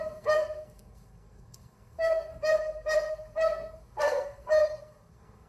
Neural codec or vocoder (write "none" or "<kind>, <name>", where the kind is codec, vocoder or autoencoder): codec, SNAC